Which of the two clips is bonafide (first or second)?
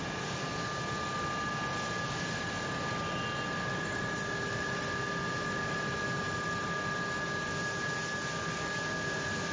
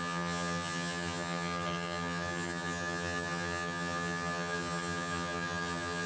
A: first